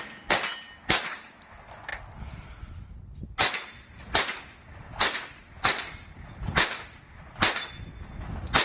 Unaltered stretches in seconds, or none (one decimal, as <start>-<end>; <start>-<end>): 0.0-8.6